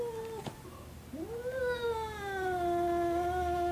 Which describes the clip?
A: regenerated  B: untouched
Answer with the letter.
B